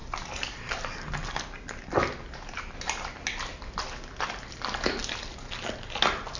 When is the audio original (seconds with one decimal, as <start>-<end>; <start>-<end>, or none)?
0.0-6.4